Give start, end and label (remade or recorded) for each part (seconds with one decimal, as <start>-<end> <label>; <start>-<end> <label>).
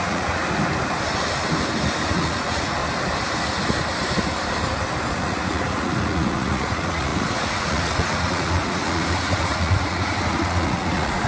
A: 0.0-0.4 remade; 0.4-2.1 recorded; 2.1-2.8 remade; 2.8-5.1 recorded; 5.1-11.3 remade